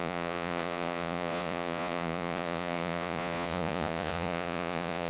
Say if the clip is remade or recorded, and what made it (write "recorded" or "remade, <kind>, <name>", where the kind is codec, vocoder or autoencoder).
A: remade, vocoder, Vocos